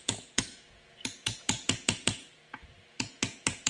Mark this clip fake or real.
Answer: fake